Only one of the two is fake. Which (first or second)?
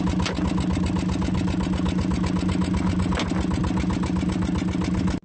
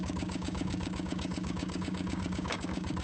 second